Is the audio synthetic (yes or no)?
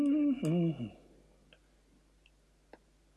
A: no